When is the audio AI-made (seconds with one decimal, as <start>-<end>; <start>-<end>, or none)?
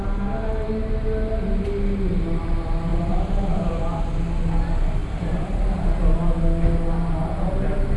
2.9-4.0; 5.0-6.4